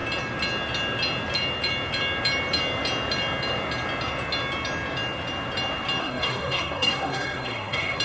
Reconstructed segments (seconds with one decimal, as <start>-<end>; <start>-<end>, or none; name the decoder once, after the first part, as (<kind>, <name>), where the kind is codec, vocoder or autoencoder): 6.0-8.0 (codec, SNAC)